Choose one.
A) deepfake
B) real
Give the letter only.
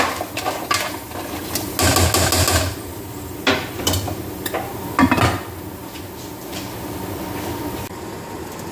B